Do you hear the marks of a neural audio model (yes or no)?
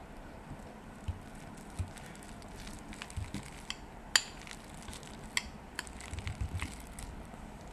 no